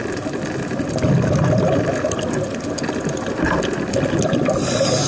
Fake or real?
real